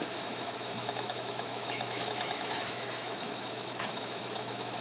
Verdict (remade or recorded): remade